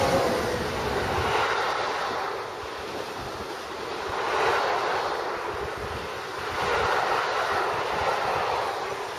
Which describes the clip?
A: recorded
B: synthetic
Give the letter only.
A